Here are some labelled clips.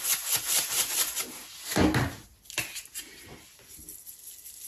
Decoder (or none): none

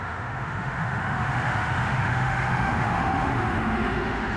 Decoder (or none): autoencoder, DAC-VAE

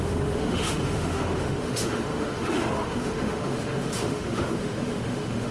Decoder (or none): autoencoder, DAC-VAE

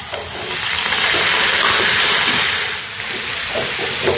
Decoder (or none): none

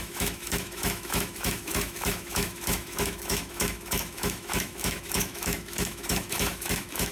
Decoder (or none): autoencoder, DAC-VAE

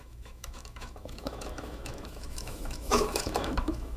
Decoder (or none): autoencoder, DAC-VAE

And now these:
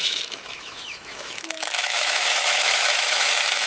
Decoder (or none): autoencoder, DAC-VAE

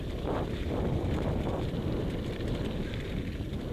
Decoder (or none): none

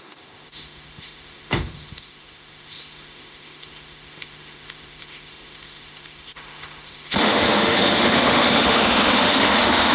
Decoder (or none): autoencoder, DAC-VAE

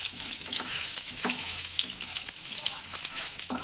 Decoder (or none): autoencoder, DAC-VAE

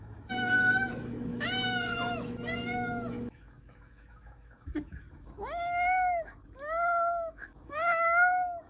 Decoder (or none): autoencoder, DAC-VAE